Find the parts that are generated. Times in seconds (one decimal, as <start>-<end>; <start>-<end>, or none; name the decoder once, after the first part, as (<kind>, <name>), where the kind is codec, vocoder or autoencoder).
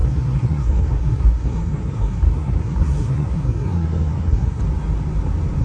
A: 0.0-4.6 (codec, SNAC)